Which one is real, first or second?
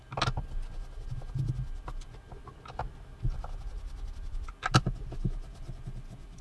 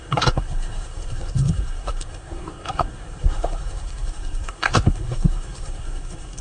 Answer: first